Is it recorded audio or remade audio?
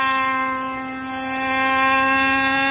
recorded